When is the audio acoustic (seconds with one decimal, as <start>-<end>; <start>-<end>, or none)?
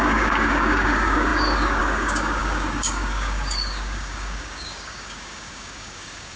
none